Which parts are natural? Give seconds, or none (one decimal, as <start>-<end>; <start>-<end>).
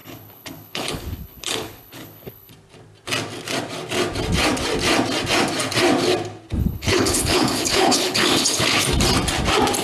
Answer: 2.5-6.6; 8.8-9.8